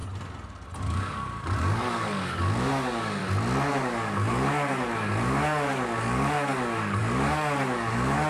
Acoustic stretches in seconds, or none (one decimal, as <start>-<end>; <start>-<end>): 0.0-0.8; 3.2-3.7